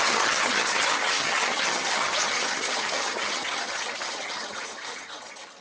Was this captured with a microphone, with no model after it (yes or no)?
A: no